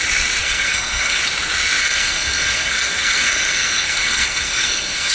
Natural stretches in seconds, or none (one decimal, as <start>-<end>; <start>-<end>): 0.0-0.4; 1.2-1.8